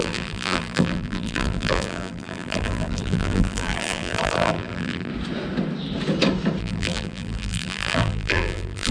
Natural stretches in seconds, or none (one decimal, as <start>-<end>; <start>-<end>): 5.1-6.6